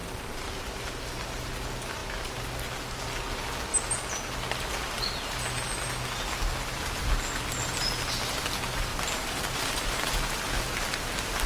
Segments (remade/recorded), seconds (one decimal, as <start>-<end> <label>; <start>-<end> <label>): 0.0-1.0 remade; 1.0-8.9 recorded; 8.9-10.1 remade; 10.1-11.5 recorded